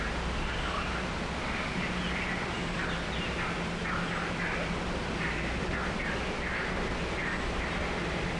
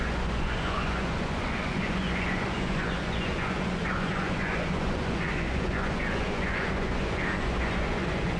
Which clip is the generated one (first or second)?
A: second